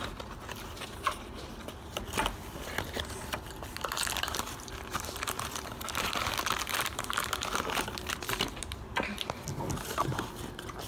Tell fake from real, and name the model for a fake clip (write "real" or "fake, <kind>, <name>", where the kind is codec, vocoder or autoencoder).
fake, vocoder, BigVGAN v2